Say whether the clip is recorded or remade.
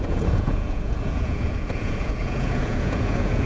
remade